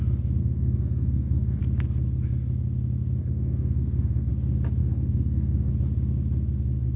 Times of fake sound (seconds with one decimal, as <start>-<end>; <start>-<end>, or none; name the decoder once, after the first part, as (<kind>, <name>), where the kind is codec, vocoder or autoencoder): 0.4-1.6 (codec, SNAC); 3.2-4.3; 4.8-5.7